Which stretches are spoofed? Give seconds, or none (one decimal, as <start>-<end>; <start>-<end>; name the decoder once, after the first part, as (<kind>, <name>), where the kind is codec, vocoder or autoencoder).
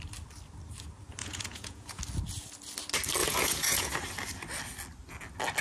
1.2-2.0 (vocoder, Vocos); 3.2-3.9